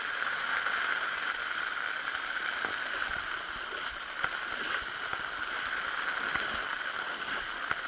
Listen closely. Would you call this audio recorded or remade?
recorded